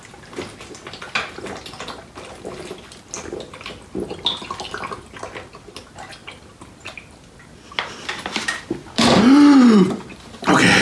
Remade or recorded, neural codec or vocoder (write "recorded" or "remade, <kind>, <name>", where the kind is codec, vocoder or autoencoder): recorded